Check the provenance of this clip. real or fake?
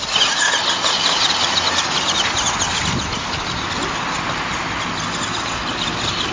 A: real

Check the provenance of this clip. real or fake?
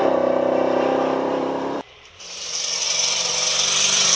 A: fake